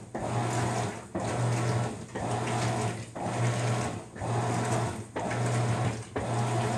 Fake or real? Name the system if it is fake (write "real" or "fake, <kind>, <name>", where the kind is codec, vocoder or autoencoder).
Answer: real